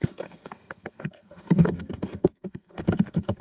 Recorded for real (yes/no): no